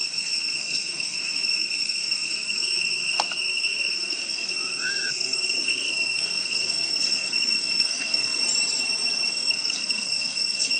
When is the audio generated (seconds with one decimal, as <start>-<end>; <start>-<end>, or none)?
0.0-8.4; 9.3-10.8